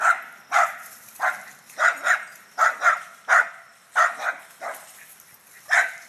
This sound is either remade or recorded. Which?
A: recorded